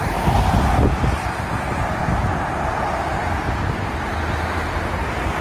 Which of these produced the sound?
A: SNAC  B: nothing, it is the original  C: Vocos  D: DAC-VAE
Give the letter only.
B